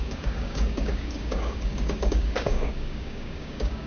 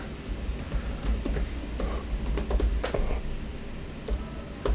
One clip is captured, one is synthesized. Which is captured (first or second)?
second